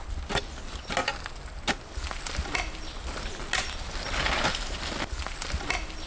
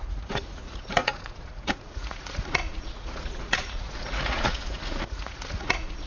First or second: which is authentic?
first